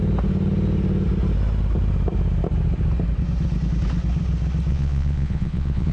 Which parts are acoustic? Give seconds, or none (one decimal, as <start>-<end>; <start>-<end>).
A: 0.0-4.7